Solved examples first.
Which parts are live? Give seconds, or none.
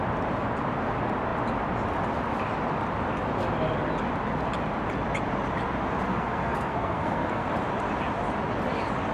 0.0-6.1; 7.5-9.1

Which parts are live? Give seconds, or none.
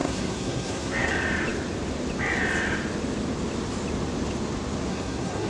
1.1-4.9